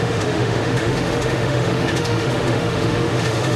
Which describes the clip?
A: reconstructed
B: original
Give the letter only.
A